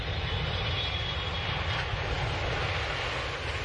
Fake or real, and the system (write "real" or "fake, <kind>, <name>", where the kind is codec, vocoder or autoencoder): real